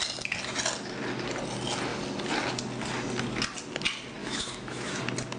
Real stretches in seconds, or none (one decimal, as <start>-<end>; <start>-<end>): 0.0-4.2; 5.0-5.4